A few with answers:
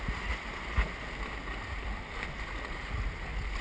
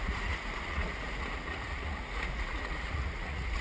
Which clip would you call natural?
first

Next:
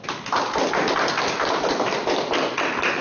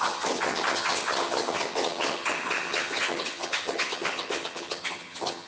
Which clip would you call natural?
first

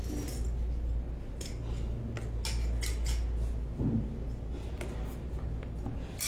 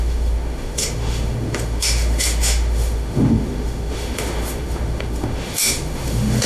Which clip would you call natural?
first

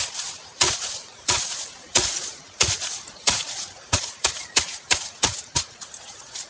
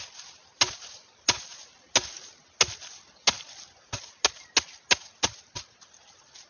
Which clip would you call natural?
second